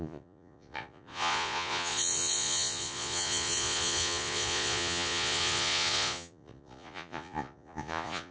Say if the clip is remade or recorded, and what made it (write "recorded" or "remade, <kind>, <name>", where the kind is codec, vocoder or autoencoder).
remade, vocoder, Vocos